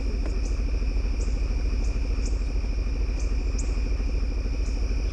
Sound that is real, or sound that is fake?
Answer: real